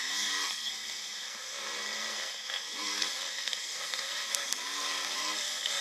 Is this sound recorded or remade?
remade